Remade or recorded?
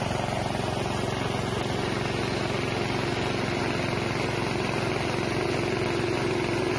recorded